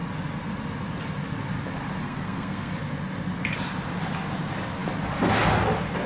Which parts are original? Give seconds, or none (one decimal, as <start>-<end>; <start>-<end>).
0.0-2.0; 2.7-6.1